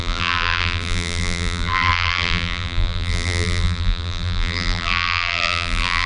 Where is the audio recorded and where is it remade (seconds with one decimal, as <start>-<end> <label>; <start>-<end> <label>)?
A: 0.0-6.1 remade